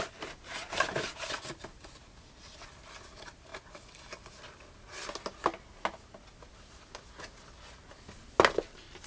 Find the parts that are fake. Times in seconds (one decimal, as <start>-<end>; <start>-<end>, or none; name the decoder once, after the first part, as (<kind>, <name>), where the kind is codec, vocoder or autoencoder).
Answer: none